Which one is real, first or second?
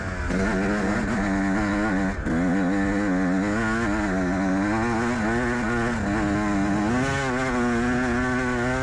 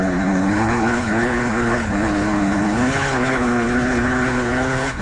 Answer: first